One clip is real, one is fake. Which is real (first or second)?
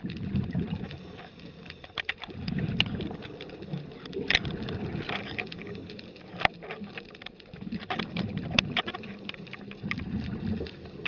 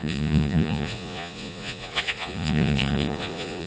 first